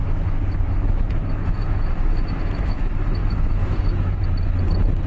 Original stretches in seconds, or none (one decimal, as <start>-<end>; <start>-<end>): 2.8-3.2; 4.2-5.1